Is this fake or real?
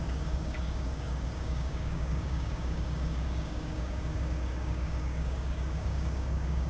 fake